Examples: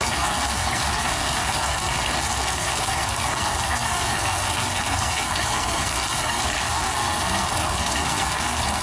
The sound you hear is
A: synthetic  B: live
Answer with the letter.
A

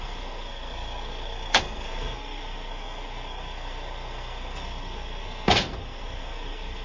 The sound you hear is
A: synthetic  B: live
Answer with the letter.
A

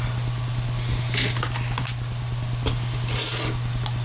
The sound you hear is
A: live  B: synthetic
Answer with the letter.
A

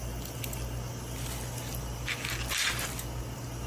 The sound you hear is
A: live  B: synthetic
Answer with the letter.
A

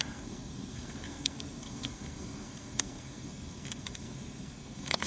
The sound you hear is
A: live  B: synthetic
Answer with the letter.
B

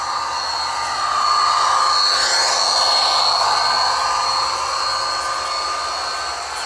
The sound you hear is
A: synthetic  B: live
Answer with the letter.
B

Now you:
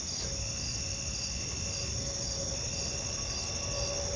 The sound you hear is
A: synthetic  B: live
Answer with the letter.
B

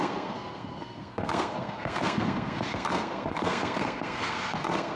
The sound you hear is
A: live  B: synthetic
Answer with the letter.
B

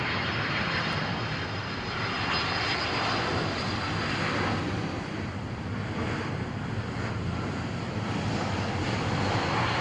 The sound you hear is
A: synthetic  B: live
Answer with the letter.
B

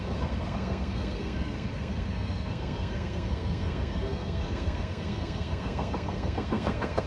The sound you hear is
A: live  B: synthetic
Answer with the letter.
B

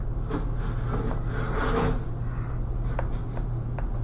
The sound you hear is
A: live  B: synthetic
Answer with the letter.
A